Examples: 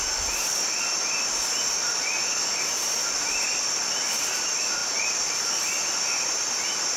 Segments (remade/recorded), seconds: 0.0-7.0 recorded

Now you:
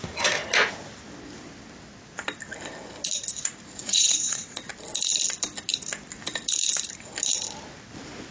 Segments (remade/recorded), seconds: 0.0-3.8 recorded; 3.8-4.7 remade; 4.7-8.3 recorded

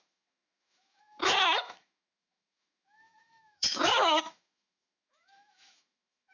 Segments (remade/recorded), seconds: 0.0-6.3 remade

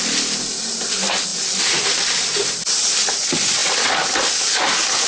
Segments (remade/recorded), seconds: 0.0-5.1 recorded

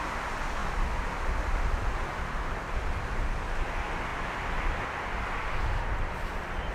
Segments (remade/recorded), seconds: 0.0-6.7 recorded

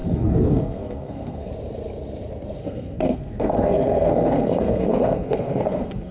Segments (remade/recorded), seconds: 0.0-1.5 remade; 1.5-2.6 recorded; 2.6-6.1 remade